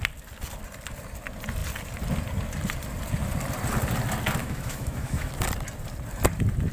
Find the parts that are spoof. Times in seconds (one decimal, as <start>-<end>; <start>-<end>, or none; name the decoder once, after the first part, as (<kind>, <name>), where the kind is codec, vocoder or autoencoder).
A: 4.4-5.3 (autoencoder, DAC-VAE)